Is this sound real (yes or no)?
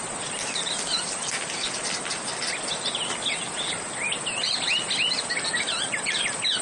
yes